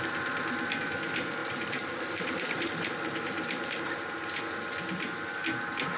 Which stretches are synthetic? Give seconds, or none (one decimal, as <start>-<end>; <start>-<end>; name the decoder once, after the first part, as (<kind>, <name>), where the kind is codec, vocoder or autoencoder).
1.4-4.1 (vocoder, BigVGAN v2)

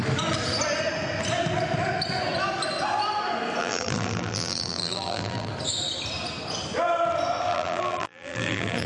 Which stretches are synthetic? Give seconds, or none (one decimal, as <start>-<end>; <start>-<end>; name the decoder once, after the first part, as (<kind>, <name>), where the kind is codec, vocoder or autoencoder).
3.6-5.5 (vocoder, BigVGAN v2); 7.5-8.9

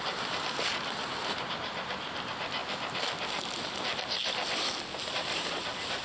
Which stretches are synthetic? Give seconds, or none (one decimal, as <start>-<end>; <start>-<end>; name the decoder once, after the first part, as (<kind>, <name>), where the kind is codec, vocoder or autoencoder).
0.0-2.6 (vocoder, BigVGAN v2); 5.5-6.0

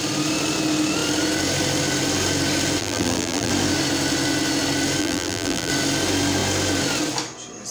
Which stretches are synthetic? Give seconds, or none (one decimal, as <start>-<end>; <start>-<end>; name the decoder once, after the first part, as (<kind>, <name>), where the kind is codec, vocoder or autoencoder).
2.8-3.5 (vocoder, BigVGAN v2); 5.0-5.7